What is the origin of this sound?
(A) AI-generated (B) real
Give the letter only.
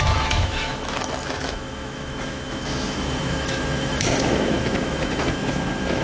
A